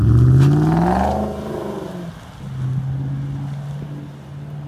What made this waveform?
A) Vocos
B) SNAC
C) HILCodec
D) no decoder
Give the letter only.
D